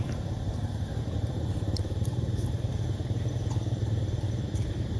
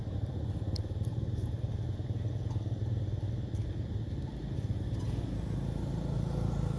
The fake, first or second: first